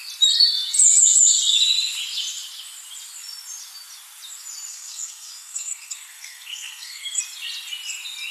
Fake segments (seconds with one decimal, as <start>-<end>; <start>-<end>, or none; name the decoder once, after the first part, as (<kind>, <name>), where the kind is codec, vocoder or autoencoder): 4.7-7.2 (codec, SNAC)